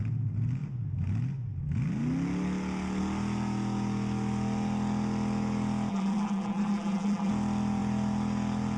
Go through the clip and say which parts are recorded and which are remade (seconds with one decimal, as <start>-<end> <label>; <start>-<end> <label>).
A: 0.0-5.9 recorded; 5.9-7.3 remade; 7.3-8.8 recorded